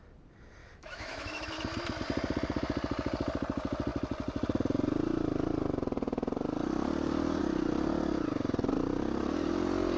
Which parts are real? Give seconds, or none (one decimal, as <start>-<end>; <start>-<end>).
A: 0.0-0.6; 1.5-10.0